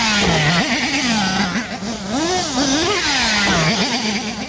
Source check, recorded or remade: recorded